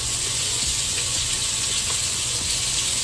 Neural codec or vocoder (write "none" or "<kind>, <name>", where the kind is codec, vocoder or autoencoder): vocoder, Vocos